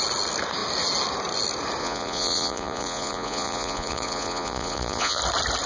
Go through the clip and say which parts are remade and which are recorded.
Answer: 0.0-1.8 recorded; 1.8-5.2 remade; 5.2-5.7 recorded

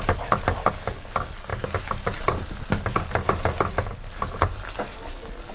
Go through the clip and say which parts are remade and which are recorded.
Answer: 0.0-5.5 recorded